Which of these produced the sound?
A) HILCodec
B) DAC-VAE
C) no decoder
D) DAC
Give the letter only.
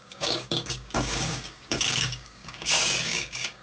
D